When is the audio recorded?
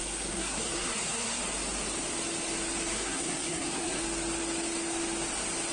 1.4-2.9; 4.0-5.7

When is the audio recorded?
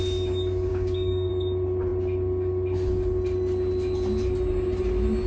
0.0-0.7; 1.3-5.3